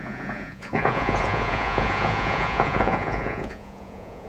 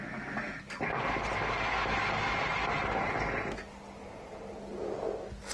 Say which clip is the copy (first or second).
first